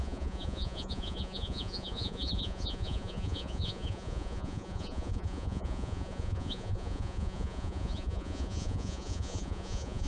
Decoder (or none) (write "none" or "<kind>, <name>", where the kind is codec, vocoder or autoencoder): vocoder, Vocos